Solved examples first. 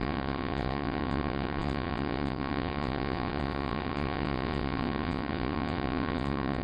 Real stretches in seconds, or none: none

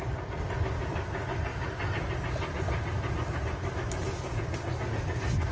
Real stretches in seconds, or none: 0.0-5.5

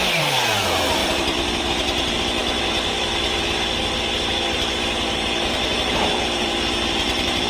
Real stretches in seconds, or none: 1.0-1.6

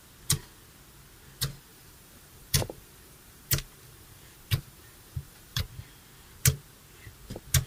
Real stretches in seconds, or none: 0.0-1.7; 5.6-7.7

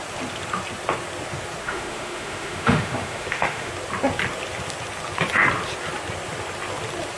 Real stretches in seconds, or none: 0.0-1.6; 3.7-7.2

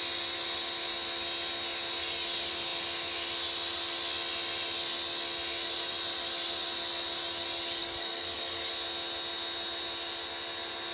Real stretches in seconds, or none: 0.0-7.8; 8.7-10.9

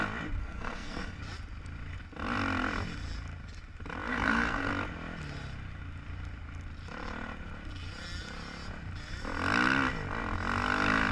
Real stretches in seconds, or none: 0.0-0.4; 1.2-4.1; 4.7-11.1

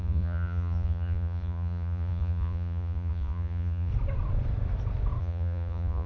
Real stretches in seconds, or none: 3.9-5.2